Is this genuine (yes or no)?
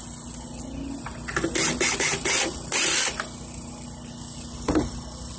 yes